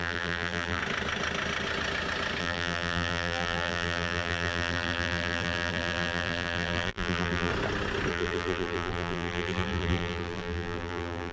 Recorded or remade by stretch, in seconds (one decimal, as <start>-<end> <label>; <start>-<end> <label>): 0.0-0.8 remade; 0.8-2.4 recorded; 2.4-7.5 remade; 7.5-8.1 recorded; 8.1-11.3 remade